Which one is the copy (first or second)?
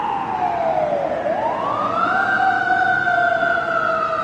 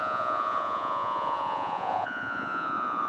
second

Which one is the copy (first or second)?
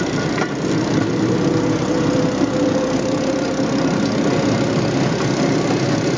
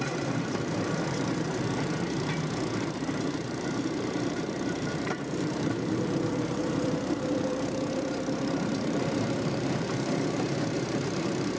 second